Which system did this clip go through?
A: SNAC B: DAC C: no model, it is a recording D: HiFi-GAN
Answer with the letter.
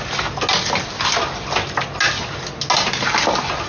C